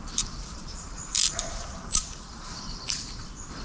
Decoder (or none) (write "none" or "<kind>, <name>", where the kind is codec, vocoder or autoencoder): vocoder, BigVGAN v2